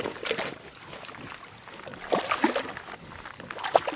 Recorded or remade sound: recorded